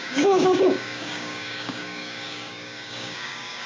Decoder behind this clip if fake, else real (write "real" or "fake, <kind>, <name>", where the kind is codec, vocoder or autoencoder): fake, codec, DAC